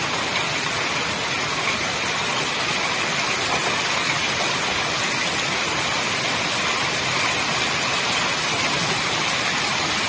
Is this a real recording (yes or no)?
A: yes